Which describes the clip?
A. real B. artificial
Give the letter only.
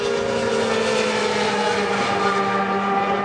A